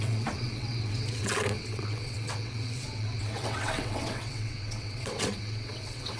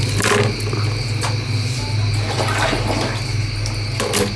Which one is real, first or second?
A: second